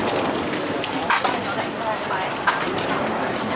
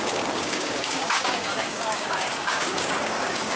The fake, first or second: second